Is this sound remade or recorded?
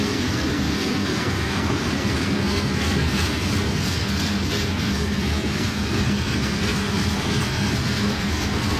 remade